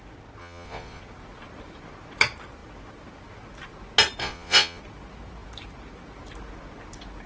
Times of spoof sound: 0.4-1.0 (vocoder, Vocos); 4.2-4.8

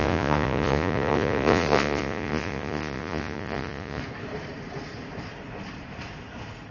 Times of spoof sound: 0.0-4.0 (vocoder, Vocos)

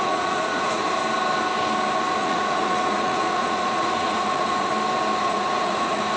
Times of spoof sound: 0.0-0.8 (vocoder, Vocos); 2.2-4.7; 5.2-6.2

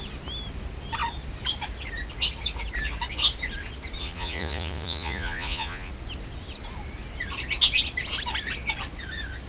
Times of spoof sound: 4.0-5.9 (vocoder, Vocos)

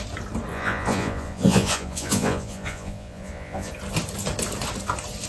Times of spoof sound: 0.5-3.7 (vocoder, Vocos)

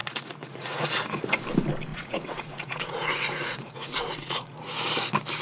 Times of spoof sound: 0.0-0.9 (vocoder, Vocos); 1.9-4.6